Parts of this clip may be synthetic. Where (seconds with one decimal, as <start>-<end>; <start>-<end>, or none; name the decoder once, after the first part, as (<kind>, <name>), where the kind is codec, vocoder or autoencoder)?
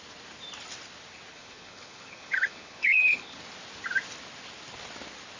1.3-3.4 (codec, HILCodec)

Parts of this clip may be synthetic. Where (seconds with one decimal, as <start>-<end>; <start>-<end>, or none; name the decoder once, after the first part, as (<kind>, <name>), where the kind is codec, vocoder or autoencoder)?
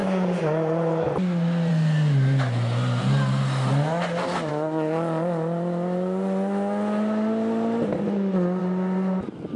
none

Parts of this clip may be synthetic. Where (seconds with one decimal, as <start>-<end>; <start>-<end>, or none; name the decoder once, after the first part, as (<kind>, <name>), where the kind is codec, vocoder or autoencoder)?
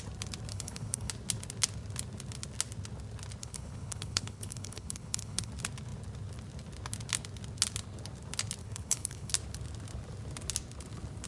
0.5-1.1 (codec, HILCodec); 3.4-5.5; 8.6-9.3